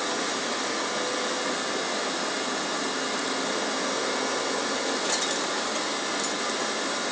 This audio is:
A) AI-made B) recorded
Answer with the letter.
B